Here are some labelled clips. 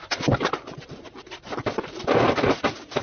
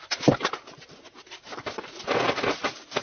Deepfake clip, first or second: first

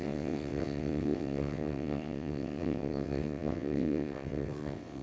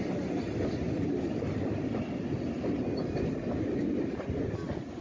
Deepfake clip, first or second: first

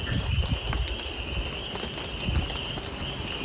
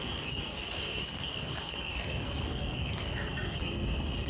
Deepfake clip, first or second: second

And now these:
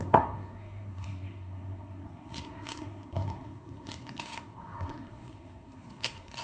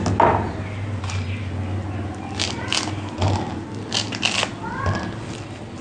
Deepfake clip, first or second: first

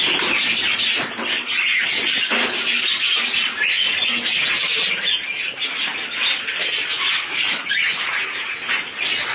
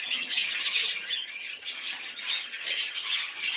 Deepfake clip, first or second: second